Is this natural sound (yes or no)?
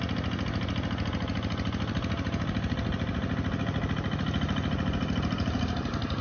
yes